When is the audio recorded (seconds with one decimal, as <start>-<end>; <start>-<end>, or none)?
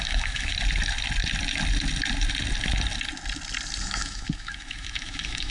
0.5-3.8